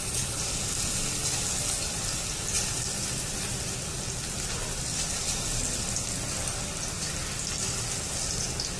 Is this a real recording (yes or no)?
yes